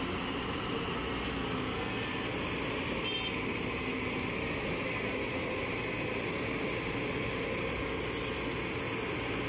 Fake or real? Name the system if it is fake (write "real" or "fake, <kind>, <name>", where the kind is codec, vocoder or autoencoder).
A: real